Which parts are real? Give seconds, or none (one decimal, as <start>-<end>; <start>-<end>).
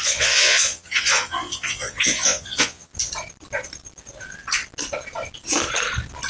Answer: 2.9-6.3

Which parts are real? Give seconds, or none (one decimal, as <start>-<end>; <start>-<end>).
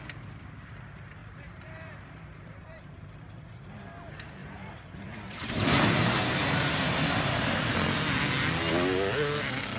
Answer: 0.0-1.2; 3.5-4.4; 7.7-9.8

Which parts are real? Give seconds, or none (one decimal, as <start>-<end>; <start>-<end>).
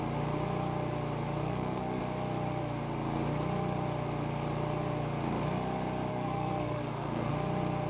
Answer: 0.0-1.4; 2.0-6.1; 7.3-7.9